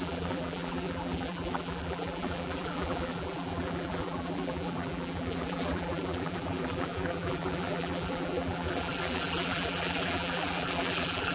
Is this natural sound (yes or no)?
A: no